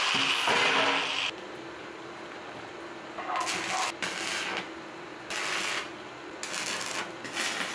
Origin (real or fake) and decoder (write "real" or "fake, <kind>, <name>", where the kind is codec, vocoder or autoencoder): real